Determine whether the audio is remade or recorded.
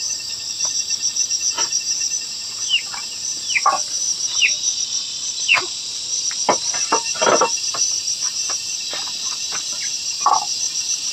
remade